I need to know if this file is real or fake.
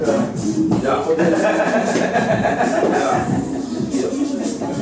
fake